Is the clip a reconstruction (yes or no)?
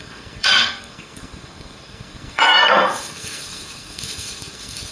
yes